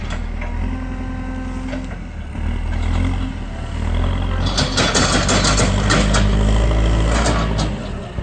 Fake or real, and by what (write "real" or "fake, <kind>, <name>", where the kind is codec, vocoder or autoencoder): real